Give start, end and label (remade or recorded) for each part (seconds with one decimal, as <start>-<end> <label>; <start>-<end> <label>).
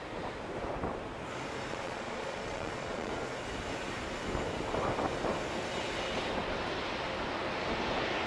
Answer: 0.0-1.7 recorded; 1.7-3.1 remade; 3.1-8.3 recorded